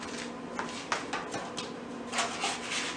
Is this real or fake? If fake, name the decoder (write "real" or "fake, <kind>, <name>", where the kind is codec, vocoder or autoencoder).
real